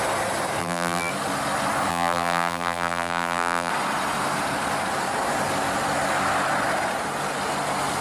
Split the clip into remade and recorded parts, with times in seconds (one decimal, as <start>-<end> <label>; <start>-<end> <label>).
0.0-0.6 recorded; 0.6-1.1 remade; 1.1-1.9 recorded; 1.9-3.7 remade; 3.7-8.0 recorded